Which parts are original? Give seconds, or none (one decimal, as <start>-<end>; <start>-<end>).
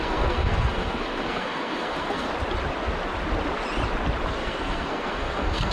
2.3-4.3